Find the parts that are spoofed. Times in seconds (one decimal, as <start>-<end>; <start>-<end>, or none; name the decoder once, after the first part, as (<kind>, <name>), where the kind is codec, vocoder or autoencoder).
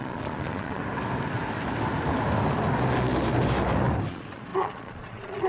0.0-0.8 (vocoder, Vocos); 4.1-5.5